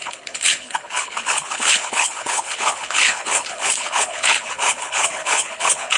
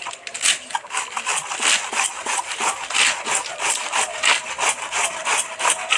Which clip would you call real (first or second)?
second